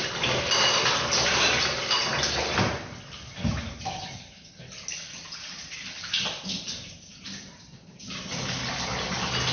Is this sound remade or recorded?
recorded